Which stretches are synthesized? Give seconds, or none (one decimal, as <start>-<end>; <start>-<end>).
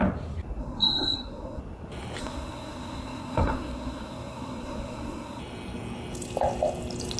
0.6-1.6; 2.2-5.4